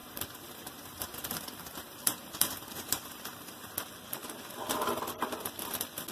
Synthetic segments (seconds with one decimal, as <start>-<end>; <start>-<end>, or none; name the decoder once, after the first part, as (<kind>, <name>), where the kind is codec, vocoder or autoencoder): 0.0-3.7 (vocoder, BigVGAN v2)